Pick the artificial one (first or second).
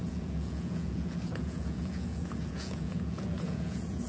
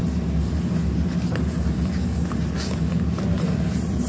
first